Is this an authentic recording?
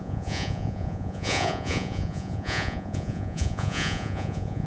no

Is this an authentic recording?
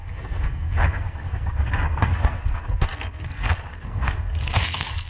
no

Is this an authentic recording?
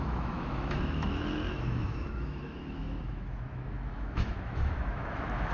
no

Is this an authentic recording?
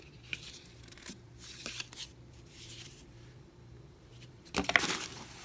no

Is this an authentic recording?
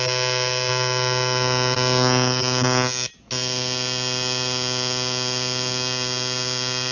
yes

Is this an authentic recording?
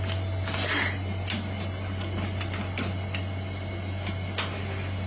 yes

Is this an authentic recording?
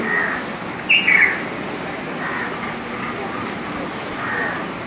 yes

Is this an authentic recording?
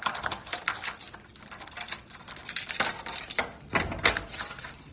yes